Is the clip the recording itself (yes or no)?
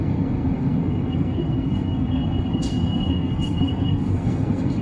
no